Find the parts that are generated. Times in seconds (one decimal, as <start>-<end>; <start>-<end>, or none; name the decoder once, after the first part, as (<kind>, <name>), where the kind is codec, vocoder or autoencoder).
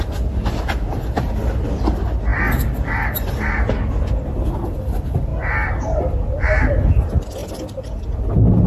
none